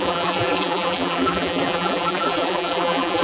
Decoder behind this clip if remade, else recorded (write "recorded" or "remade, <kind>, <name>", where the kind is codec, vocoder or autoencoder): remade, vocoder, BigVGAN v2